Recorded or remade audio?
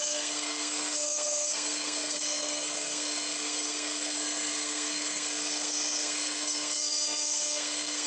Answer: remade